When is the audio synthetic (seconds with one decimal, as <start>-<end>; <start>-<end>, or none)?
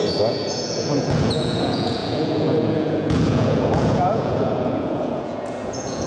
0.0-6.1